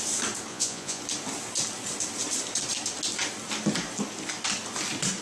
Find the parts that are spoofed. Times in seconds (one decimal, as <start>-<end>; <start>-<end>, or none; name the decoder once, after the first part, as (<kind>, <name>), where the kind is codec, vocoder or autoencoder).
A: 0.5-1.0 (vocoder, Vocos)